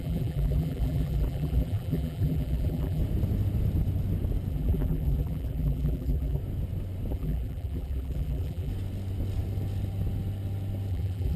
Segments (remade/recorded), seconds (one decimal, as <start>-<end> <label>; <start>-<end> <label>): 0.0-3.0 remade; 3.0-4.5 recorded; 4.5-6.4 remade; 6.4-7.1 recorded; 7.1-8.7 remade; 8.7-10.9 recorded; 10.9-11.4 remade